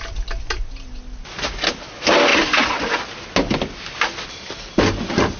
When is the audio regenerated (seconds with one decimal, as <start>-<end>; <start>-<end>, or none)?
none